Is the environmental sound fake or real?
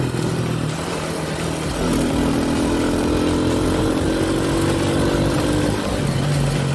real